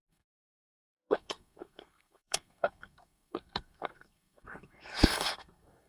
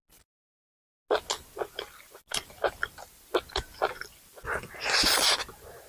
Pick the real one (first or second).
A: second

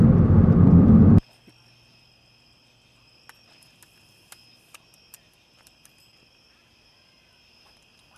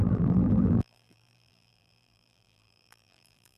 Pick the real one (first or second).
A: first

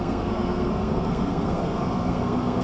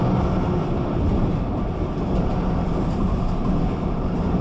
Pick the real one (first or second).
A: second